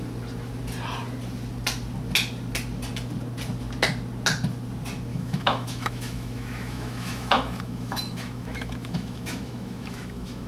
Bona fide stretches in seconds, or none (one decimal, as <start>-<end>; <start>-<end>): 0.0-5.1